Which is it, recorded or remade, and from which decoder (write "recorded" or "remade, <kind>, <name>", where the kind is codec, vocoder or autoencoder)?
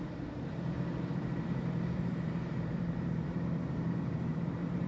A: remade, vocoder, BigVGAN v2